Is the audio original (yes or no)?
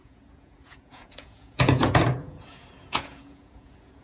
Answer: no